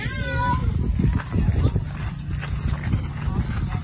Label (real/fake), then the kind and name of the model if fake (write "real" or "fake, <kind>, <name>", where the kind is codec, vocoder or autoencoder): real